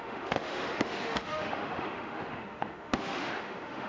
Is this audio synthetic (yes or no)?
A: yes